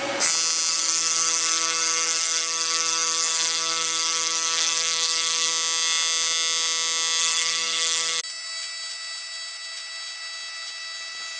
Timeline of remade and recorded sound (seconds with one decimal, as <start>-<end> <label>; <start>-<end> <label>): 0.0-0.7 recorded; 0.7-5.5 remade; 5.5-7.2 recorded; 7.2-8.2 remade; 8.2-11.4 recorded